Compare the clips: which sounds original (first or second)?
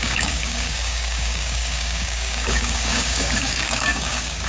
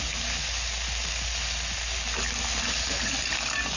second